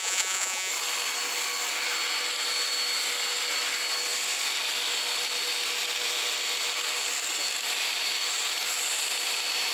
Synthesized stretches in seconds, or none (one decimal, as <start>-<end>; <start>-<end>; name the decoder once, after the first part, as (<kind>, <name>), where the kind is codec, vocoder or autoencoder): 0.0-0.7 (vocoder, Vocos)